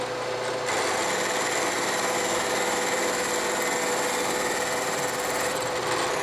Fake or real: real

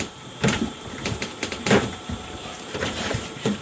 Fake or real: fake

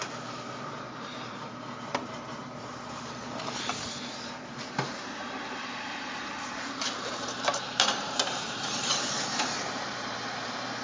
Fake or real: fake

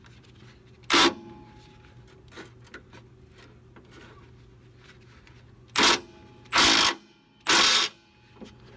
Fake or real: real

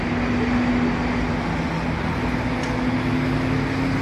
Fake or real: real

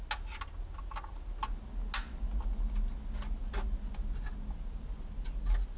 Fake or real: real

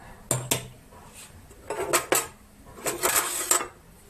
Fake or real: real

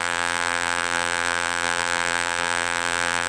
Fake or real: fake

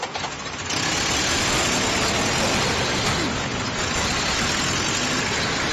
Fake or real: real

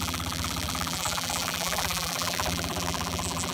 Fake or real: fake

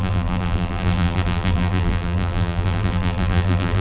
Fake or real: fake